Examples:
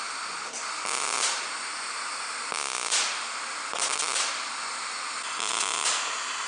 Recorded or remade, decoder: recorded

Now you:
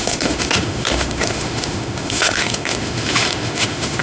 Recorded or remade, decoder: remade, autoencoder, DAC-VAE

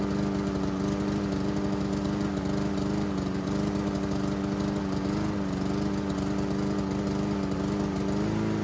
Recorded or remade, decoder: recorded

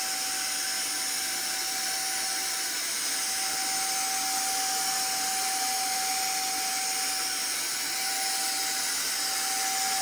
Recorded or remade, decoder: recorded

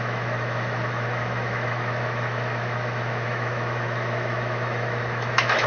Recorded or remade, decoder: remade, autoencoder, DAC-VAE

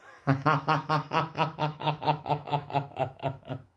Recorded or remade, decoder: remade, autoencoder, DAC-VAE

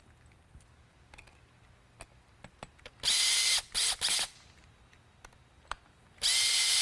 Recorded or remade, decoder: recorded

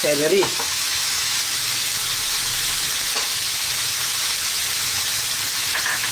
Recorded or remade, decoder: remade, autoencoder, DAC-VAE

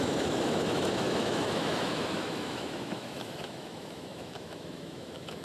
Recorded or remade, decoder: remade, autoencoder, DAC-VAE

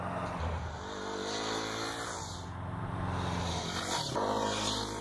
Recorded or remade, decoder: recorded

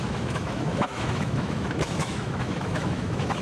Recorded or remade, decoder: remade, autoencoder, DAC-VAE